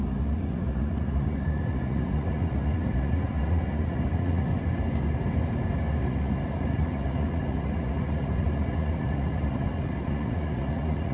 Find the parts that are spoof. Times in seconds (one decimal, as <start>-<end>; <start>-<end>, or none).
0.0-4.5; 6.0-11.1